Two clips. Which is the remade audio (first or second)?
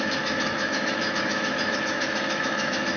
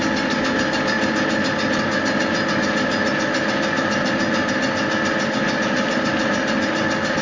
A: first